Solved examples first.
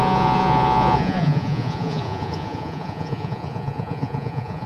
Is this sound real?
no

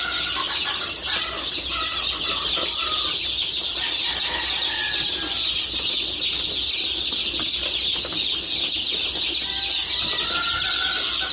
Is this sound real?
yes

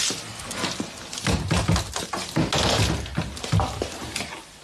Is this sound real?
yes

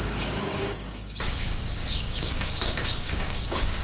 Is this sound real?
no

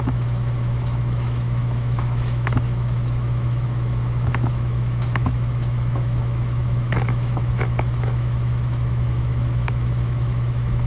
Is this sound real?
no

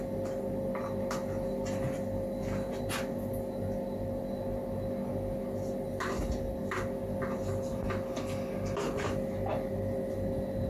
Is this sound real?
yes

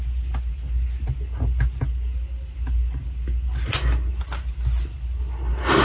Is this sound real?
yes